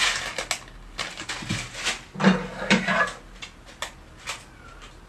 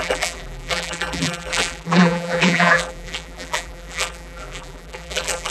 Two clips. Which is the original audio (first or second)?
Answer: first